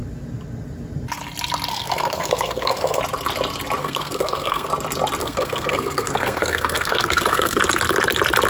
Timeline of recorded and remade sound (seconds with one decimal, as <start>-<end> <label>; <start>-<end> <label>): 0.0-1.7 recorded; 1.7-3.0 remade; 3.0-3.8 recorded; 3.8-4.7 remade; 4.7-5.2 recorded; 5.2-7.6 remade; 7.6-8.5 recorded